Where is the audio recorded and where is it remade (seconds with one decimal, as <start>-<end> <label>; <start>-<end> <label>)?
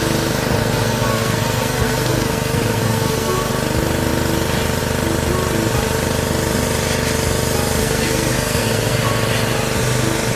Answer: 0.0-0.6 recorded; 0.6-3.5 remade; 3.5-7.8 recorded; 7.8-9.1 remade; 9.1-10.4 recorded